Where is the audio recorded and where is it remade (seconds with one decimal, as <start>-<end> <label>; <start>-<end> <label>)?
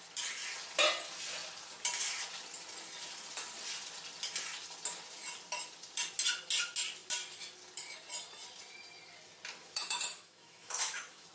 0.0-9.6 recorded; 9.6-11.3 remade